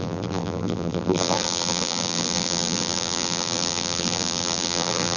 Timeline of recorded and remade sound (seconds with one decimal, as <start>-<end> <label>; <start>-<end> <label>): 0.0-5.2 remade